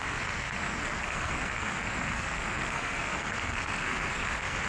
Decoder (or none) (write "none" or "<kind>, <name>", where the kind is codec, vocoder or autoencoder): codec, SNAC